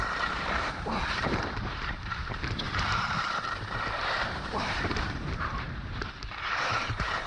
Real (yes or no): no